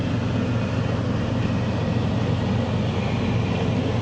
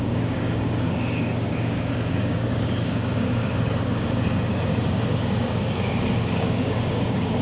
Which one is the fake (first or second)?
second